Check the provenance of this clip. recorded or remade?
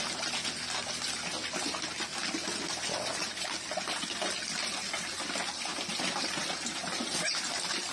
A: recorded